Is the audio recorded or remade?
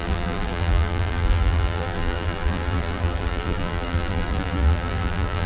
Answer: remade